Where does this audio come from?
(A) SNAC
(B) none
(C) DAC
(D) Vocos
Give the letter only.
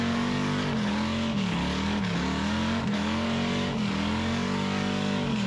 C